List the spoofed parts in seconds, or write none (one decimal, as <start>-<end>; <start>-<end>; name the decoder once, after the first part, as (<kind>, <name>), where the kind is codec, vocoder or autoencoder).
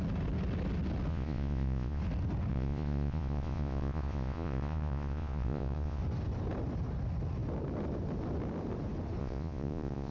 1.1-2.0 (vocoder, Vocos); 2.5-6.0; 9.2-10.1